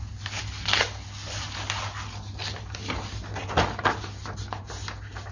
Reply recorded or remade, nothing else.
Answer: recorded